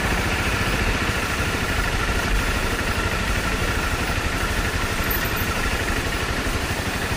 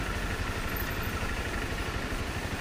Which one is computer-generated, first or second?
first